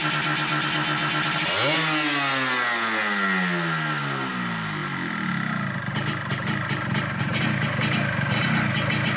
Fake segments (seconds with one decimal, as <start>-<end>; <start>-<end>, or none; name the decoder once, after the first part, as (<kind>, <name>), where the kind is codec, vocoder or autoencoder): none